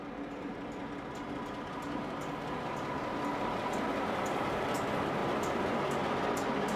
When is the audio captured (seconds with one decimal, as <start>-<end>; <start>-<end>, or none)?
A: 0.0-6.8